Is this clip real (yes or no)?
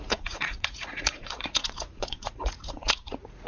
no